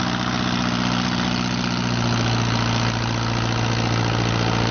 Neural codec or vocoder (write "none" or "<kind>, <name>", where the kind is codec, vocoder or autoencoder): none